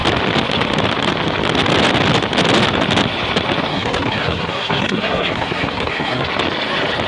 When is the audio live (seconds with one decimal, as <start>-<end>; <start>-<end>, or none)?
0.0-3.7; 6.3-7.1